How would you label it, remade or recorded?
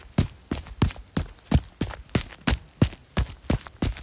recorded